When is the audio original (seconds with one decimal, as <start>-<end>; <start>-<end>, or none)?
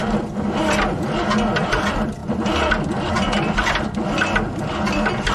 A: 0.0-5.3